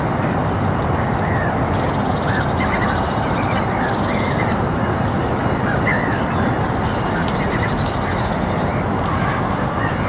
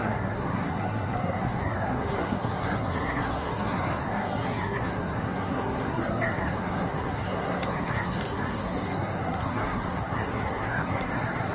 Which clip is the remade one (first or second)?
second